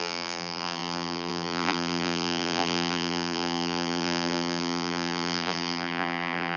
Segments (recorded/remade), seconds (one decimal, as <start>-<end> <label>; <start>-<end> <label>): 0.0-6.6 remade